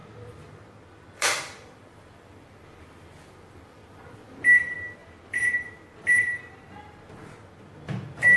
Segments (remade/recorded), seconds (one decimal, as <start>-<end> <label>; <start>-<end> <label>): 0.0-4.3 remade; 4.3-5.0 recorded; 5.0-6.4 remade; 6.4-8.4 recorded